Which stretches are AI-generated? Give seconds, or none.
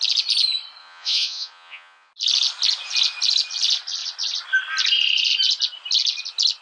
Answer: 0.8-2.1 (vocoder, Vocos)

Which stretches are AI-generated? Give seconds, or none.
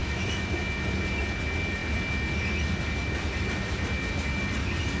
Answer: 0.0-0.6 (autoencoder, DAC-VAE)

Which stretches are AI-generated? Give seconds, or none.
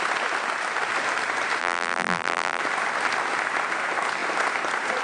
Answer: 1.6-2.6 (vocoder, BigVGAN v2)